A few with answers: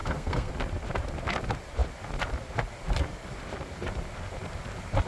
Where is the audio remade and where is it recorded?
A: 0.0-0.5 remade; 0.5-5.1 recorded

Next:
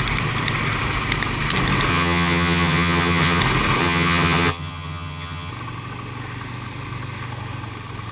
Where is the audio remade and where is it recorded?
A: 0.0-1.9 recorded; 1.9-3.4 remade; 3.4-3.8 recorded; 3.8-5.5 remade; 5.5-8.1 recorded